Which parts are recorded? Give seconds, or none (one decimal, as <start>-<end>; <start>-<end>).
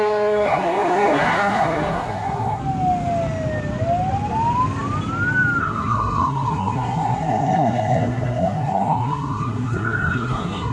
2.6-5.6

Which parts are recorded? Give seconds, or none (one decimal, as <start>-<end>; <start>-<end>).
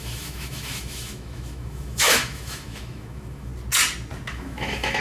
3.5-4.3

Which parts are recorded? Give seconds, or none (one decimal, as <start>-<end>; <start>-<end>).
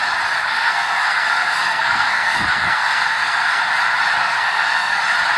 0.0-0.4; 3.6-4.2; 5.0-5.4